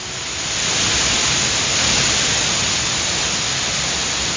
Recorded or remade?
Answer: recorded